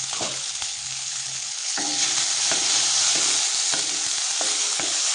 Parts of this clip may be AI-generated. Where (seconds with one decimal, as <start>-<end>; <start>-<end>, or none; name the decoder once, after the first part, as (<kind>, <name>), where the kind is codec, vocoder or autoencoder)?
0.0-1.9 (codec, HILCodec); 4.6-5.1